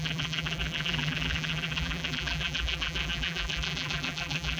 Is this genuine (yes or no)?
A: no